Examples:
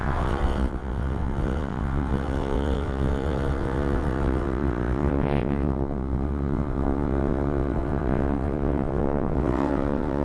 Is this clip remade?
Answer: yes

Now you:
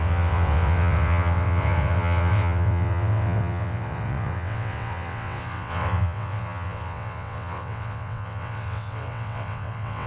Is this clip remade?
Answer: yes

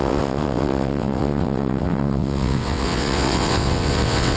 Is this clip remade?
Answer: yes